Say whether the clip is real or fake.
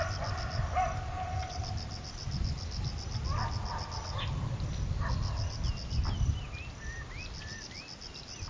real